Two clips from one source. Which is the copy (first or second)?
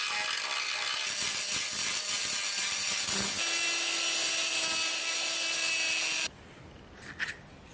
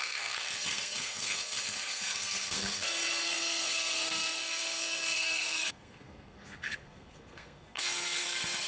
second